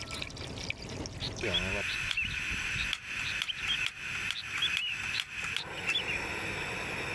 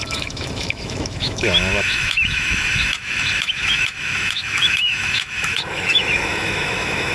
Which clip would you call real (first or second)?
first